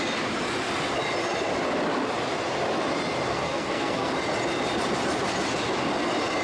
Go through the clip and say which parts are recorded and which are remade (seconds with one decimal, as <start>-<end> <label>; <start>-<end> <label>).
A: 0.0-3.3 recorded; 3.3-4.1 remade; 4.1-6.4 recorded